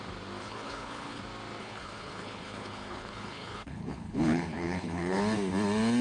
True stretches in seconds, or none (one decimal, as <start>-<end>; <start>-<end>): 0.0-0.4; 1.2-1.6; 5.2-6.0